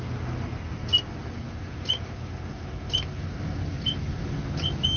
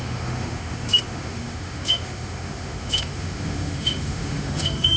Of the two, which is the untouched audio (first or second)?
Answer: first